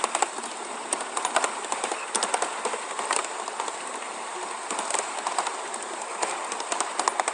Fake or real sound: real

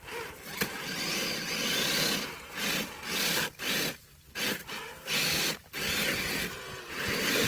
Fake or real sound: real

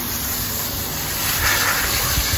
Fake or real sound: real